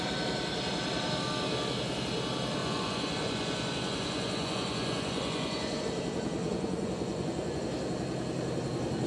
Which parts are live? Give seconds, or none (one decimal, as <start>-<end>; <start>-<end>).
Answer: 0.0-2.6; 5.8-6.4; 7.6-9.1